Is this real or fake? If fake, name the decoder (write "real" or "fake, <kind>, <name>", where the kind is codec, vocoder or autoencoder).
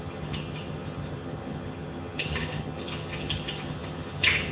fake, vocoder, HiFi-GAN